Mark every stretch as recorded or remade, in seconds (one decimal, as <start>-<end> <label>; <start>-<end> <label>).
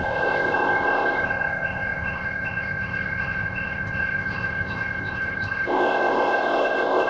0.0-7.1 remade